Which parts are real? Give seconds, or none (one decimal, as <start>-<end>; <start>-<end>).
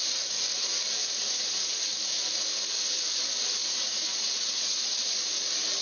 0.0-1.0; 1.9-3.6; 5.3-5.8